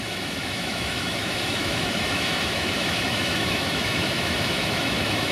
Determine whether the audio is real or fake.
fake